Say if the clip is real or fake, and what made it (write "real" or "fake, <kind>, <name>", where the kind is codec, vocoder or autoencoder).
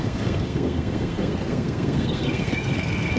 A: fake, codec, SNAC